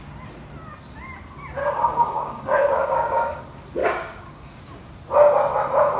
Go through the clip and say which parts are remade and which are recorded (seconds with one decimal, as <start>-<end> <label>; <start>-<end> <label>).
0.0-1.6 recorded; 1.6-3.4 remade; 3.4-3.8 recorded; 3.8-4.6 remade; 4.6-6.0 recorded